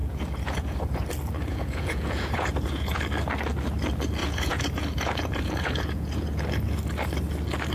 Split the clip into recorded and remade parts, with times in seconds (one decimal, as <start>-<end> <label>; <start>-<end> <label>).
0.0-1.1 remade; 1.1-1.5 recorded; 1.5-3.0 remade; 3.0-4.2 recorded; 4.2-6.4 remade; 6.4-7.7 recorded